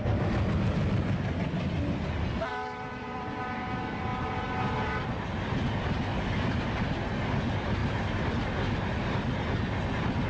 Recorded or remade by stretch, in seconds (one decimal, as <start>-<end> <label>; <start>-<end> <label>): 0.0-2.5 recorded; 2.5-3.4 remade; 3.4-6.1 recorded; 6.1-6.8 remade; 6.8-7.8 recorded; 7.8-8.3 remade; 8.3-10.3 recorded